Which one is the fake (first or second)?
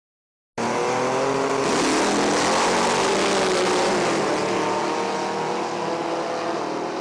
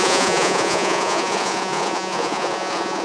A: second